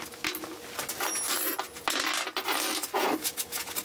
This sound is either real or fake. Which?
real